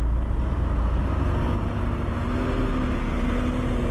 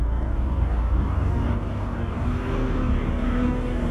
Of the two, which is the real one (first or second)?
first